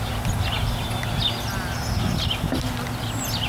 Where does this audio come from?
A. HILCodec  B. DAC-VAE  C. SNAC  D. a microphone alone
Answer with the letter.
D